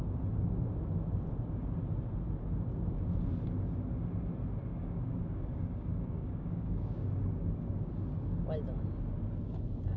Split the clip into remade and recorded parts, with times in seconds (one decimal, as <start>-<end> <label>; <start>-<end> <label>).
0.0-4.7 recorded; 4.7-7.9 remade; 7.9-10.0 recorded